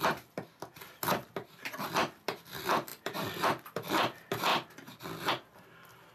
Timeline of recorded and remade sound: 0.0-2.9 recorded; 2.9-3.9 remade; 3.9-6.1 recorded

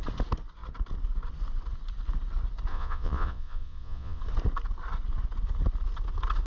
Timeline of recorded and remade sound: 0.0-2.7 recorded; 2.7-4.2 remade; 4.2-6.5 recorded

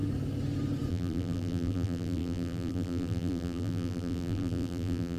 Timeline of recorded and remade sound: 0.0-0.9 recorded; 0.9-5.2 remade